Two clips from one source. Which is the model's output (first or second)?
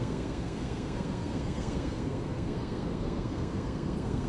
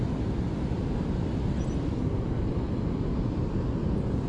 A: first